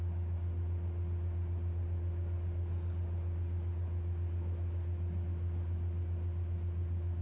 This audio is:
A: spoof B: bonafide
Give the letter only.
B